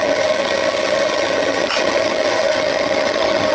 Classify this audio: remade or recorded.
remade